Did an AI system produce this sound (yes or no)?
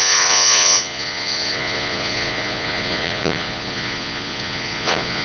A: yes